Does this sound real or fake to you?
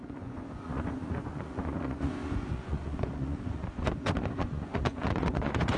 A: fake